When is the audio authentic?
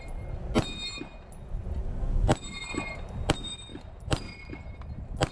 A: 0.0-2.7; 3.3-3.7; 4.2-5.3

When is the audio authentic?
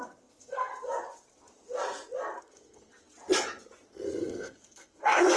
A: 0.7-2.4; 2.9-4.2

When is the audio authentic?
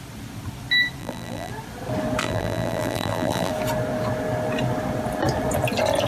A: 0.0-1.0; 1.5-2.2; 3.5-6.1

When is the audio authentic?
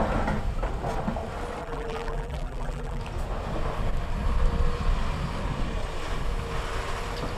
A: 0.0-1.6; 3.0-7.4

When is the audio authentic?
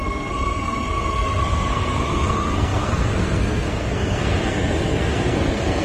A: none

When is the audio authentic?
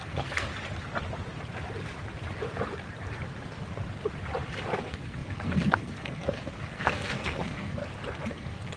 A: 0.5-4.8; 7.8-8.3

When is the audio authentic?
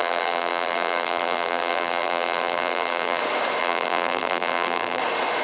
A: 3.2-3.6; 5.0-5.4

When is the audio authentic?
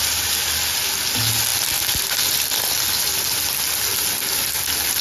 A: 0.0-5.0